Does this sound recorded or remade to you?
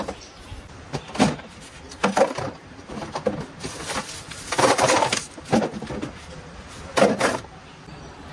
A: remade